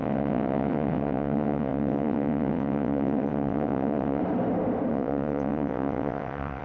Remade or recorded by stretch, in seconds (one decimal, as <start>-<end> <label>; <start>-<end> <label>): 0.0-4.2 remade; 4.2-4.9 recorded; 4.9-6.6 remade